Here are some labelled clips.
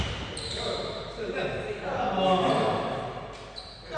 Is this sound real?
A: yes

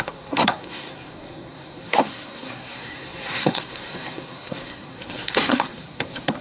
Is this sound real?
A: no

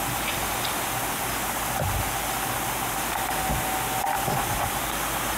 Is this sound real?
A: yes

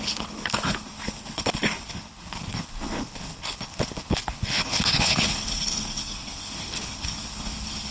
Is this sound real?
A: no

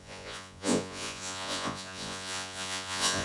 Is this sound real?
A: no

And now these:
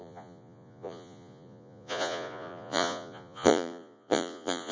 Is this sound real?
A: no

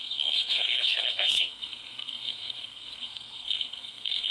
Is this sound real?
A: no